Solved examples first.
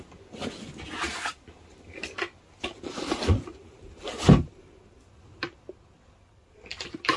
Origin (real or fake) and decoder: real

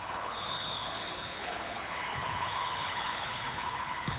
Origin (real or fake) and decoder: fake, codec, HILCodec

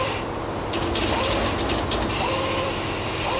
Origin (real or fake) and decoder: real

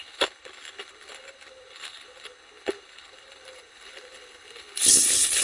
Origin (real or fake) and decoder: fake, codec, HILCodec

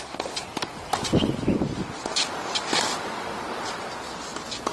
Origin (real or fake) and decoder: real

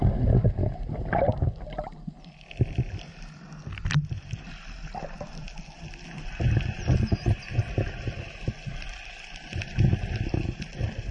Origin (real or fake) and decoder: real